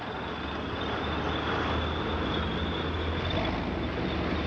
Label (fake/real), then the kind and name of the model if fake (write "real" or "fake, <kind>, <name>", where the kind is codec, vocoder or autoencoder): real